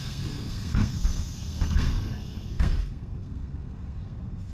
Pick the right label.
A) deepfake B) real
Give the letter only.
A